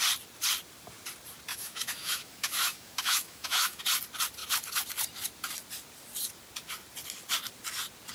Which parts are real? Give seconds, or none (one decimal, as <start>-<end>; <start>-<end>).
0.0-1.5; 3.8-8.1